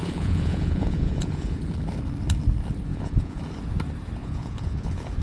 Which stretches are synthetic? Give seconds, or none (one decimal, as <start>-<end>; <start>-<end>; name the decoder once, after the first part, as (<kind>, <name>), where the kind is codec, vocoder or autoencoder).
0.0-1.6 (vocoder, Vocos); 2.9-3.4; 4.2-5.2